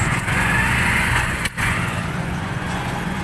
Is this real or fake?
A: fake